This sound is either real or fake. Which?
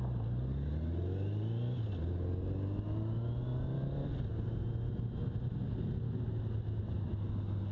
real